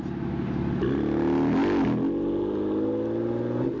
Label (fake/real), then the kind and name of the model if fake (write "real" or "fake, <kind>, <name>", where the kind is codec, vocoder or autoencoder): real